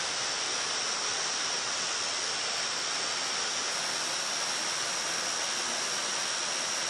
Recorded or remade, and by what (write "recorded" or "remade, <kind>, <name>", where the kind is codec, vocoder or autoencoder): recorded